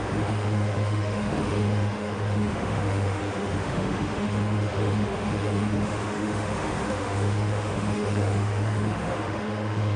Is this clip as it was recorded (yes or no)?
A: no